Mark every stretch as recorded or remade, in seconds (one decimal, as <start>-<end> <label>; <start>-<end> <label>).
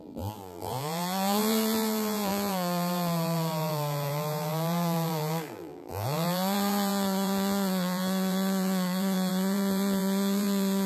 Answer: 0.0-10.9 remade